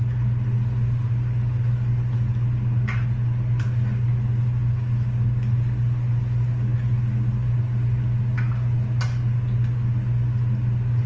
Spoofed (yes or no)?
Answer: no